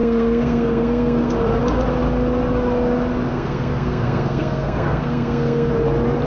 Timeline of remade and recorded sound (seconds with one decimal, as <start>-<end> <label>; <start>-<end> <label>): 0.0-1.3 remade; 1.3-3.3 recorded; 3.3-5.7 remade; 5.7-6.3 recorded